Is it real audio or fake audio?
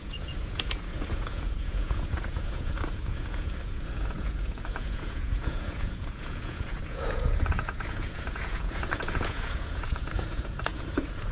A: fake